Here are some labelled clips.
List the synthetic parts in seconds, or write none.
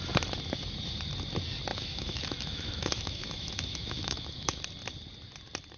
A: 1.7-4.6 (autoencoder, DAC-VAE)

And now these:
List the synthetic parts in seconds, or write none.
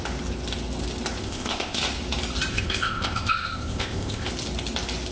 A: 1.2-1.8 (codec, ZipCodec); 2.5-4.3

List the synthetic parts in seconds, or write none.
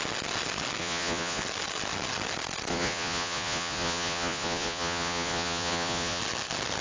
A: 0.8-1.4 (vocoder, Vocos); 2.7-6.2